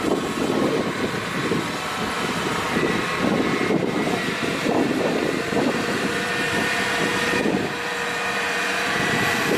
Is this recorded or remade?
remade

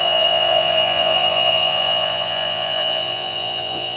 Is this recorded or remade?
remade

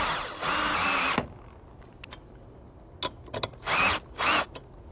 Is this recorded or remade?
recorded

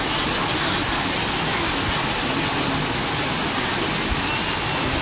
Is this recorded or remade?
recorded